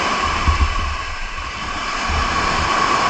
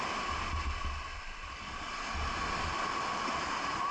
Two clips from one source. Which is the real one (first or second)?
second